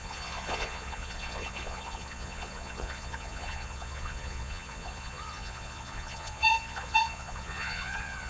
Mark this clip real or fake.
fake